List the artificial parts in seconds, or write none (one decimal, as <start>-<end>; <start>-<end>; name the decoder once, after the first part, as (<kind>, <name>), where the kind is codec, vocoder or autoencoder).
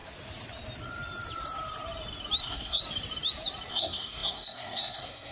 2.4-2.8 (codec, SNAC); 3.7-5.3